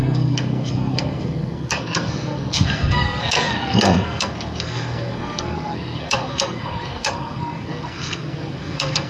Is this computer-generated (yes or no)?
yes